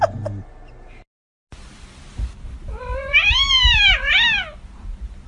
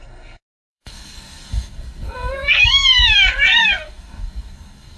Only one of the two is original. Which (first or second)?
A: first